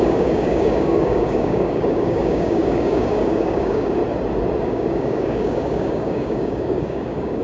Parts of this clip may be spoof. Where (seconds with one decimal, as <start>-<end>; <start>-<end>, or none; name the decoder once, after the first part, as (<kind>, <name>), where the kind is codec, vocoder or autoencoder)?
0.0-4.0 (codec, DAC); 4.6-7.4